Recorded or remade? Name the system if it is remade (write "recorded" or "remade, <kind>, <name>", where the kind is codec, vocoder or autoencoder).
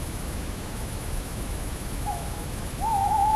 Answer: remade, autoencoder, DAC-VAE